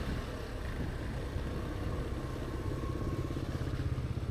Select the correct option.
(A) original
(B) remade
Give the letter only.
A